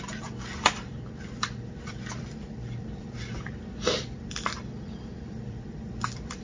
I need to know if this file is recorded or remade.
remade